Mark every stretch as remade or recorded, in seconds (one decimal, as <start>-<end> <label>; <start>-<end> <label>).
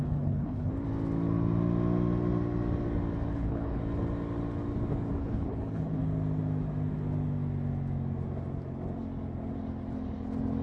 0.0-0.7 remade; 0.7-3.3 recorded; 3.3-3.8 remade; 3.8-5.2 recorded; 5.2-6.0 remade; 6.0-10.6 recorded